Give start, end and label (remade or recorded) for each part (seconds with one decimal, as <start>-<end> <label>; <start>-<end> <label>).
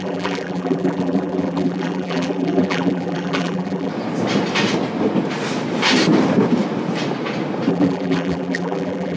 0.0-3.9 remade; 3.9-7.7 recorded; 7.7-9.2 remade